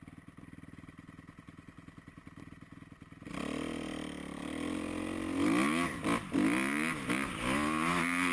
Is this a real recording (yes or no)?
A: yes